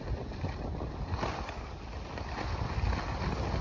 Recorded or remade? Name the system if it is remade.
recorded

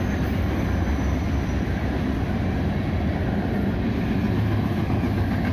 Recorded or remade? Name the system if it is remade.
recorded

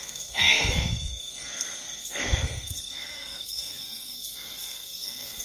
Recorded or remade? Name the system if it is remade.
remade, codec, SNAC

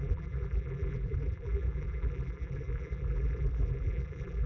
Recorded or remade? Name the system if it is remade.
remade, vocoder, BigVGAN v2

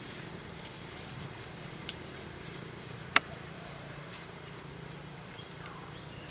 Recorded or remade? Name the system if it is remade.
remade, vocoder, BigVGAN v2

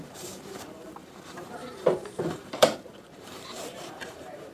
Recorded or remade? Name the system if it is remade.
remade, vocoder, BigVGAN v2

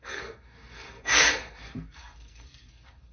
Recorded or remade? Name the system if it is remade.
remade, codec, SNAC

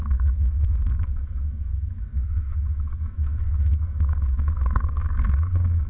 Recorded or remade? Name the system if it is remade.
remade, codec, SNAC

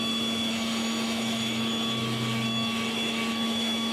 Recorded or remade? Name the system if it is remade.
remade, autoencoder, DAC-VAE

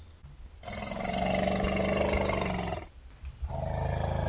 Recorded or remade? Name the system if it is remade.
recorded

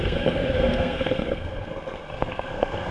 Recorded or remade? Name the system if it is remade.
remade, codec, SNAC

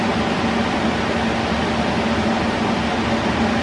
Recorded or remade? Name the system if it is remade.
recorded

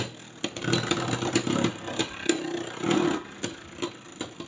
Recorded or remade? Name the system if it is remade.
recorded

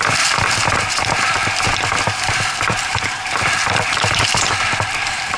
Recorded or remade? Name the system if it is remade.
recorded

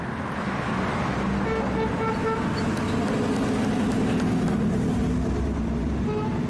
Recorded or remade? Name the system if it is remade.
recorded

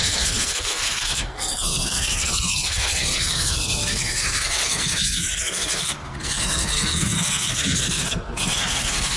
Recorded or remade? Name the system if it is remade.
remade, codec, SNAC